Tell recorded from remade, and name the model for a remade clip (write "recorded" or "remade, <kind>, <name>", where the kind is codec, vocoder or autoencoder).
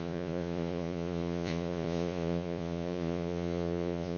remade, vocoder, Vocos